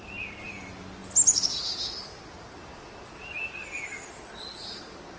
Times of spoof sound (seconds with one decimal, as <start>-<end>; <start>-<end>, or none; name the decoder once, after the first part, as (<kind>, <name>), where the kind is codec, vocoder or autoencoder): none